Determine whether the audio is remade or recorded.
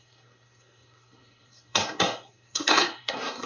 remade